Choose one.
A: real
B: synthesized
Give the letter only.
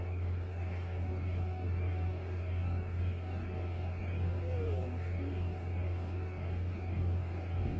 B